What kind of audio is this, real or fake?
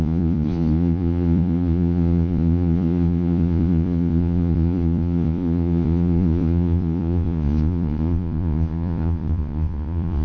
fake